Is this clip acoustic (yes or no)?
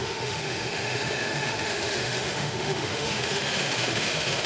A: no